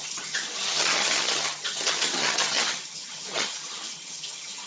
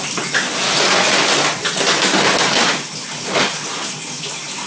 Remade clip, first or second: first